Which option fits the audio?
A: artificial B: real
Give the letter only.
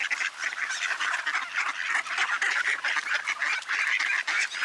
A